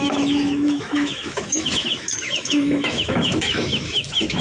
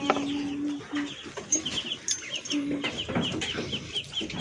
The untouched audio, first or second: second